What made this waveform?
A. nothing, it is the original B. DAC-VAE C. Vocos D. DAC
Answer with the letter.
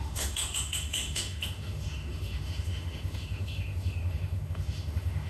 B